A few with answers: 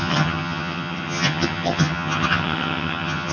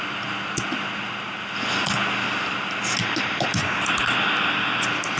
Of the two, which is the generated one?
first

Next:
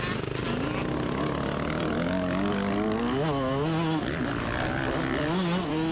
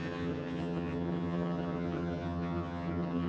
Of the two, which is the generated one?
second